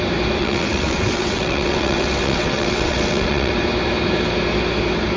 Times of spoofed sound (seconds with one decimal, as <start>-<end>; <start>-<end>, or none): 0.4-3.5